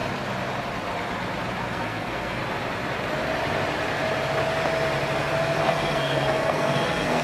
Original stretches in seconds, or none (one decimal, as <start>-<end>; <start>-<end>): 0.0-1.6; 2.4-5.6

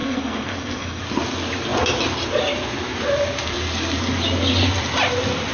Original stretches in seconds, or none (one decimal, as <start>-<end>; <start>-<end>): 1.0-5.5

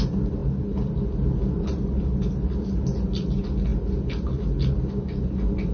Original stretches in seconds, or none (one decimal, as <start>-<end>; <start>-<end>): 0.0-5.7

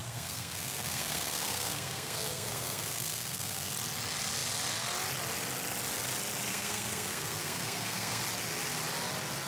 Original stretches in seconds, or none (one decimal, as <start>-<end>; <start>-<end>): 3.7-6.5; 8.2-9.5

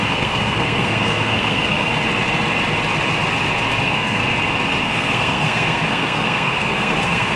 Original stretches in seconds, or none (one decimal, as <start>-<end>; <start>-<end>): 1.9-3.8; 4.2-4.8

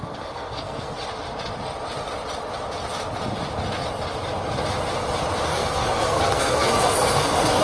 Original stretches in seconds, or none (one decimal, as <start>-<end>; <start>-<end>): 0.9-5.5